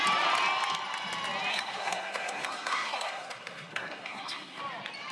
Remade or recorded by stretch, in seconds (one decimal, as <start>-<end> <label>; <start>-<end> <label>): 0.0-1.5 recorded; 1.5-4.6 remade; 4.6-5.1 recorded

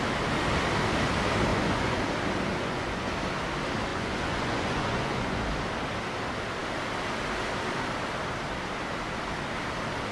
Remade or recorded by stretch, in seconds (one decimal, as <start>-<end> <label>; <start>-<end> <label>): 0.0-1.5 recorded; 1.5-2.0 remade; 2.0-2.5 recorded; 2.5-3.1 remade; 3.1-3.9 recorded; 3.9-5.4 remade; 5.4-10.1 recorded

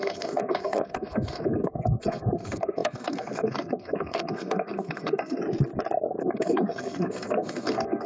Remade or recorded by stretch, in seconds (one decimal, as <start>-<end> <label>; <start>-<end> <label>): 0.0-5.4 remade; 5.4-6.2 recorded; 6.2-8.1 remade